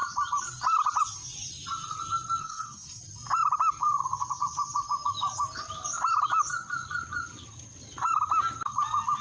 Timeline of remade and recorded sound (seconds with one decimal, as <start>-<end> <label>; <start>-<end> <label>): 0.0-2.4 recorded; 2.4-3.0 remade; 3.0-9.2 recorded